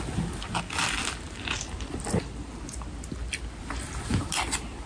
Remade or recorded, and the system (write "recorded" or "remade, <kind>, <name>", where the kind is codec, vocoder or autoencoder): recorded